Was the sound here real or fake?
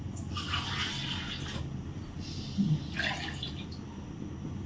real